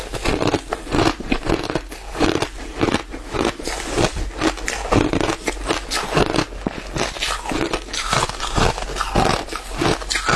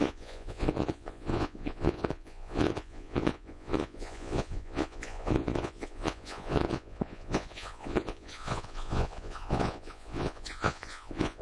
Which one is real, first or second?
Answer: first